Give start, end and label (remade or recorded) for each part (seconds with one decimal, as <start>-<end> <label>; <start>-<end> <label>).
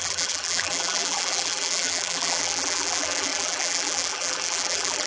0.0-5.1 remade